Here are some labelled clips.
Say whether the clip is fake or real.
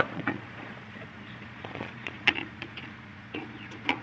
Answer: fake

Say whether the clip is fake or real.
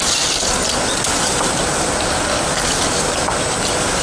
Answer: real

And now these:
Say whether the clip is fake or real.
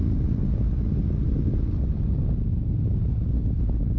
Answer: real